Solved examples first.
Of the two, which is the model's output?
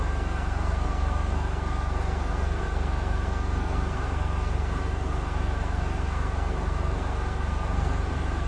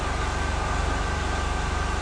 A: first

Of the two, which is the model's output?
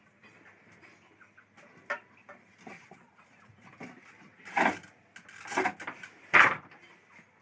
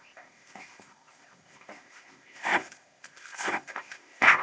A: second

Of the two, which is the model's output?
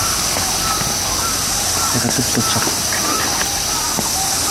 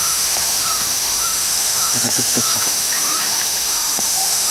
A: second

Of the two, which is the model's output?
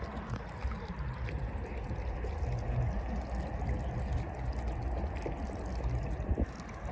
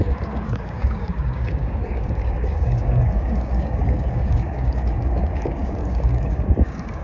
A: second